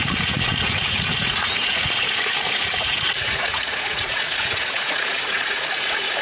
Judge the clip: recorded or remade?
remade